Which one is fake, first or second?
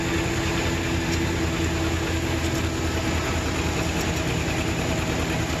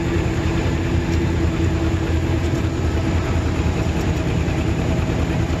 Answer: second